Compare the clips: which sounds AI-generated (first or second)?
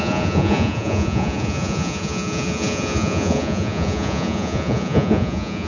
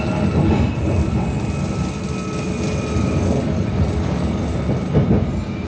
first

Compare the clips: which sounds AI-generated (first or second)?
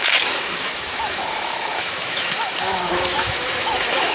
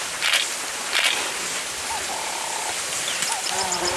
first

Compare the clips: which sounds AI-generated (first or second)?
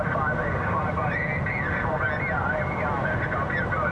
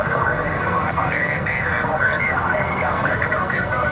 second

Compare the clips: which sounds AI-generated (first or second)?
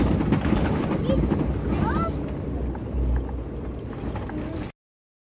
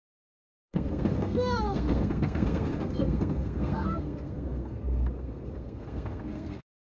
second